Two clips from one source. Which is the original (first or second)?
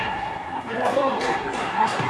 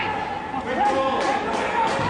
second